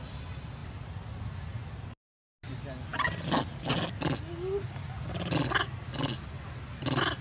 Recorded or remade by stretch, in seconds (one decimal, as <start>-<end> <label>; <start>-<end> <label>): 0.0-7.2 recorded